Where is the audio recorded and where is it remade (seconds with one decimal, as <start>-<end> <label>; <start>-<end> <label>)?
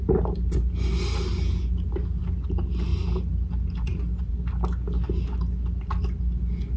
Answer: 0.0-6.8 recorded